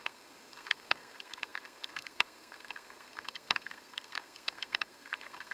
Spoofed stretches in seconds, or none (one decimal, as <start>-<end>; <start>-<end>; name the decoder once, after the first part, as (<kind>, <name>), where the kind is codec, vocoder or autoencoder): 0.0-5.5 (codec, SNAC)